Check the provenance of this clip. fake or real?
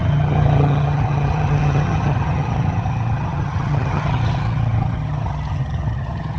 fake